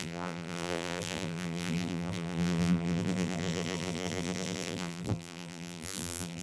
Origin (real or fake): fake